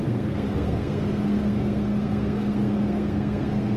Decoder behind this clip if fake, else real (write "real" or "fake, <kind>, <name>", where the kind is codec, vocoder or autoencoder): fake, codec, SNAC